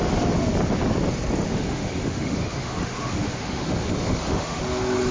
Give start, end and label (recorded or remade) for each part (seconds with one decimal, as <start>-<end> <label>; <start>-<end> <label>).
0.0-1.5 recorded; 1.5-4.6 remade; 4.6-5.1 recorded